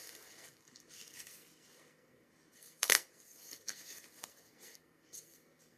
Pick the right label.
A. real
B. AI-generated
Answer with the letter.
B